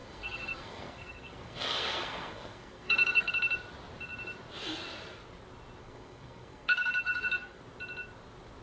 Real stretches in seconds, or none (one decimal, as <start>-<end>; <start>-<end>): 3.3-5.8; 7.6-8.6